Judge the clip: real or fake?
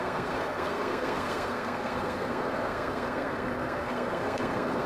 fake